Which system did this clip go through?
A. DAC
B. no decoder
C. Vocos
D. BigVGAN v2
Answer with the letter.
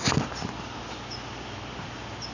B